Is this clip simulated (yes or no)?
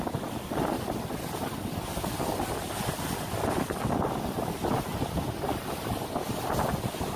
no